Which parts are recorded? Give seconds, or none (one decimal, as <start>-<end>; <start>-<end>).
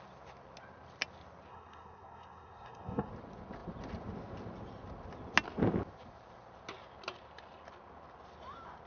0.0-1.5; 3.1-8.9